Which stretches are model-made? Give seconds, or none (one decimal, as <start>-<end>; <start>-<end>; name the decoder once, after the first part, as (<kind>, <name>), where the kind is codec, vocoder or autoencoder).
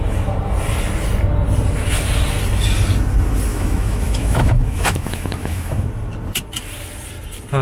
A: 3.5-5.9 (autoencoder, DAC-VAE)